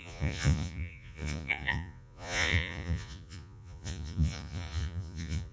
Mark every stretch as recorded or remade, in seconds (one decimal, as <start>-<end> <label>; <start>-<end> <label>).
0.0-5.5 remade